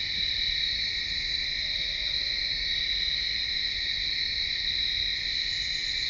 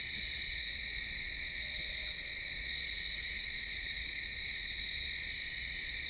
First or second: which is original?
first